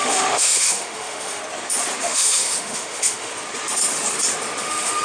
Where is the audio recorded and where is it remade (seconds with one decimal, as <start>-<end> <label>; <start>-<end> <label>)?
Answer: 0.0-1.4 remade; 1.4-2.0 recorded; 2.0-3.3 remade; 3.3-4.6 recorded; 4.6-5.0 remade